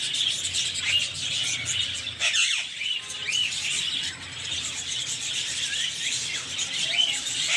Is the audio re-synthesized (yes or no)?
no